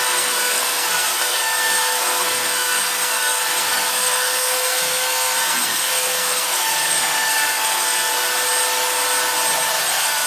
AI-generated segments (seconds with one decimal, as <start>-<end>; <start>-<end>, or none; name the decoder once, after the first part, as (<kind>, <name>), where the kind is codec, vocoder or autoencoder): 0.0-8.1 (codec, SNAC); 9.9-10.3